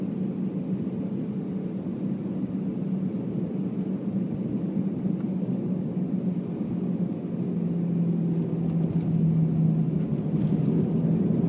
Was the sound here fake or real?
real